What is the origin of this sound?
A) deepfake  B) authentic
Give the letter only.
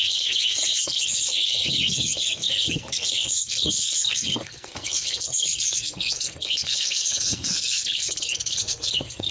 A